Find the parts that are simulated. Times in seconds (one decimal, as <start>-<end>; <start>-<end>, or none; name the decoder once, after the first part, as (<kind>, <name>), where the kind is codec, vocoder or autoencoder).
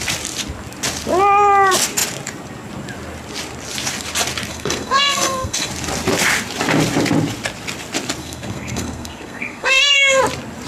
4.5-5.7 (codec, SNAC); 8.2-10.2